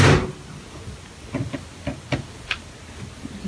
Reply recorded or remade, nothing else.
recorded